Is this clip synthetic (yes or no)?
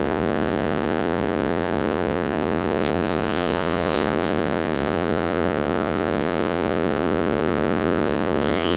yes